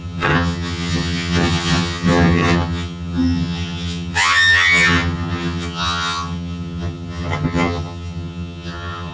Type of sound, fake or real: fake